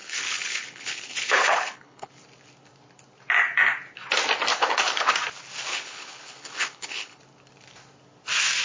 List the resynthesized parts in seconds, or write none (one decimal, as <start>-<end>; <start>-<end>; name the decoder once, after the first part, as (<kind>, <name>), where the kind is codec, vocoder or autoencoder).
0.0-2.1 (codec, HILCodec); 4.5-5.1; 5.7-7.2